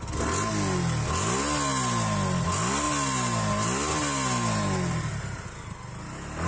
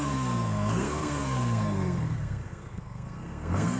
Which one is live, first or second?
first